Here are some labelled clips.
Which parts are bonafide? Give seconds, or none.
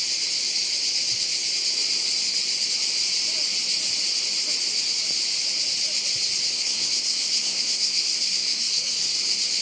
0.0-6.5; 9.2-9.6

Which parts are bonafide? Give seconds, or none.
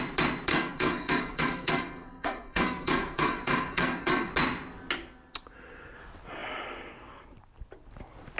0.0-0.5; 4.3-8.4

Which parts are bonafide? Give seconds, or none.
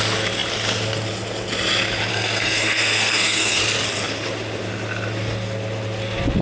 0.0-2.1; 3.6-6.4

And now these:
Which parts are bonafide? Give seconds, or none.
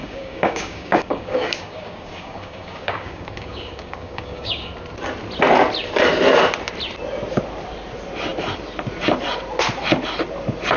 4.7-10.8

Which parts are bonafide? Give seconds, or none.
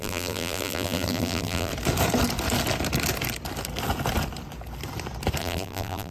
1.7-5.4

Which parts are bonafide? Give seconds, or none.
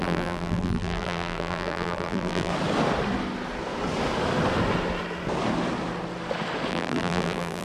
2.5-6.7